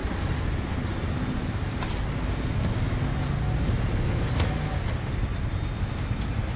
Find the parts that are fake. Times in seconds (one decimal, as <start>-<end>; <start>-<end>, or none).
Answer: none